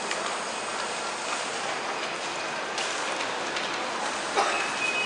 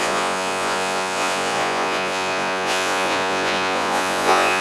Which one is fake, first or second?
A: second